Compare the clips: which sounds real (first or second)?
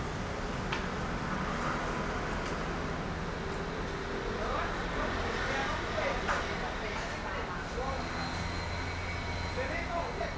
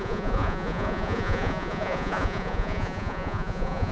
first